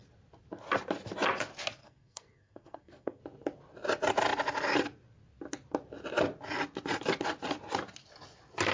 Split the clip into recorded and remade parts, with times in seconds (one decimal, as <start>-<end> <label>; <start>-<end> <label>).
0.0-1.8 recorded; 1.8-3.2 remade; 3.2-8.7 recorded